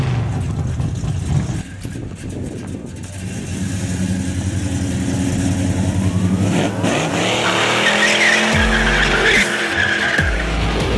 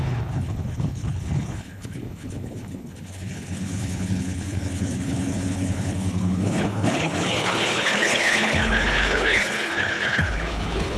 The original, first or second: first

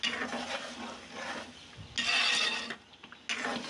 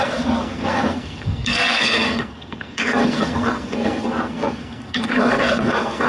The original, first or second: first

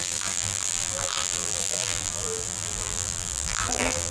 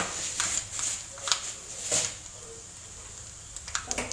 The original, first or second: second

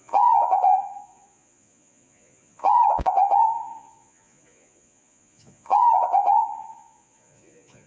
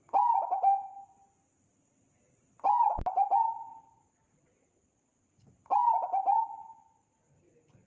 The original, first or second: second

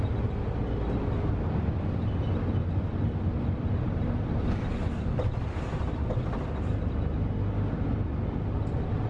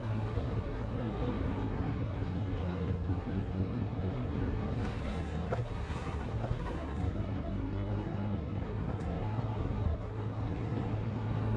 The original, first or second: first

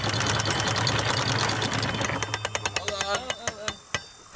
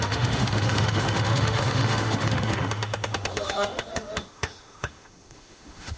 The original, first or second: first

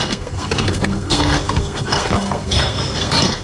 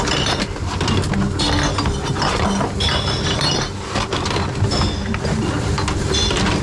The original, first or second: second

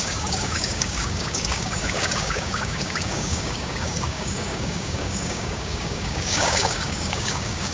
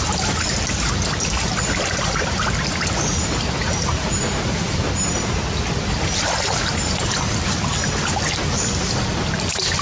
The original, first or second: second